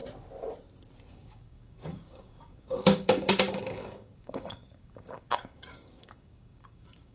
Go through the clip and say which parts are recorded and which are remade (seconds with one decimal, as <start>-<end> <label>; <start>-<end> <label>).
0.0-1.1 recorded; 1.1-7.1 remade